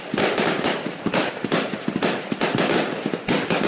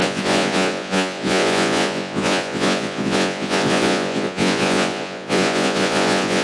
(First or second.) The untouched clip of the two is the first